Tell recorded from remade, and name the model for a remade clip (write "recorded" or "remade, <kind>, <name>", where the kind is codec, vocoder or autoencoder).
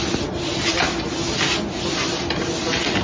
recorded